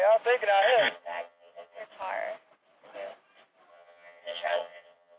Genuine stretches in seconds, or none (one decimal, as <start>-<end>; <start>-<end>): 0.0-0.9; 1.8-3.7